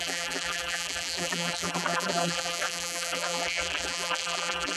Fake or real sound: fake